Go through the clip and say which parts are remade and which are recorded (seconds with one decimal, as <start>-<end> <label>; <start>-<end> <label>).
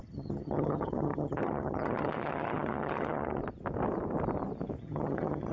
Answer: 0.0-3.4 remade; 3.4-4.8 recorded; 4.8-5.5 remade